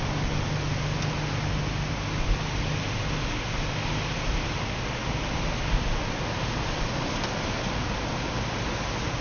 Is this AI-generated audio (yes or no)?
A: no